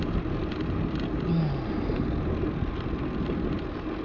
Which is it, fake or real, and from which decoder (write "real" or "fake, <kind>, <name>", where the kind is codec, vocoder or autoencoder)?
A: real